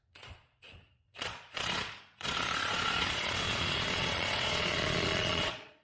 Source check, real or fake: fake